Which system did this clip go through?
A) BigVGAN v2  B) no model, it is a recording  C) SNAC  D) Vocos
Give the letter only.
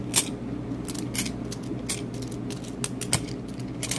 B